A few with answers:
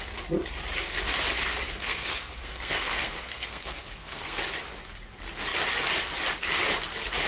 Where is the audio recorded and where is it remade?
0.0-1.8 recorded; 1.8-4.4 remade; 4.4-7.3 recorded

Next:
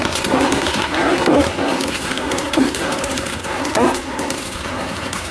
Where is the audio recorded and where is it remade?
0.0-5.3 remade

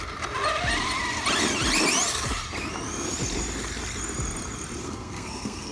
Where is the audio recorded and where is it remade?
0.0-4.8 recorded; 4.8-5.7 remade

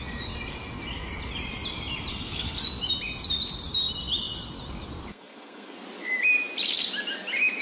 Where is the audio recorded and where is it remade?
0.0-2.1 recorded; 2.1-2.6 remade; 2.6-5.1 recorded; 5.1-5.8 remade; 5.8-7.6 recorded